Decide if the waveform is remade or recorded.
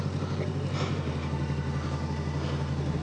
recorded